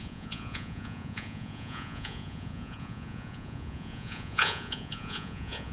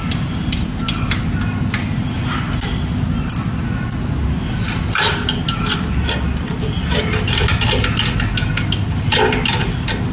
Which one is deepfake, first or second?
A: first